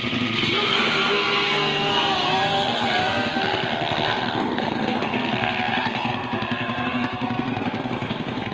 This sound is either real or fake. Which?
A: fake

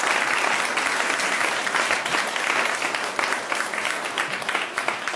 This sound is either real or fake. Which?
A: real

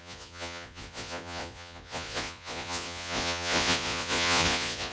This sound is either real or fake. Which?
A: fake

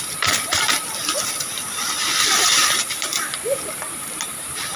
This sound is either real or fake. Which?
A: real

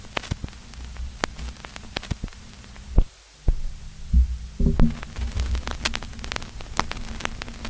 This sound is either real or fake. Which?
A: real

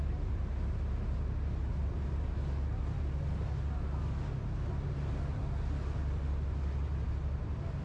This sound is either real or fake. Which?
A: real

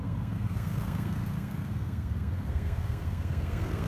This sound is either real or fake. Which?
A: fake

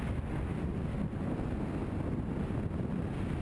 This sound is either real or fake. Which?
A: real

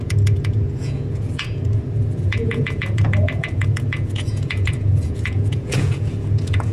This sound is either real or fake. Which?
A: fake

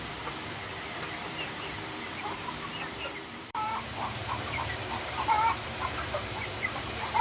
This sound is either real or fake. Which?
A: fake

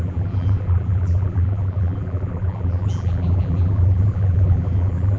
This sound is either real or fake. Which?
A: fake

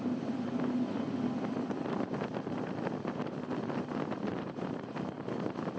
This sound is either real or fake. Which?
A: real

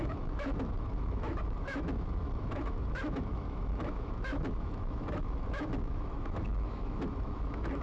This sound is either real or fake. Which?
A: fake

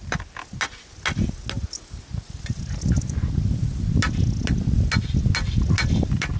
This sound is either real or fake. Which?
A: real